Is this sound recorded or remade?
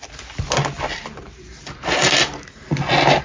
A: recorded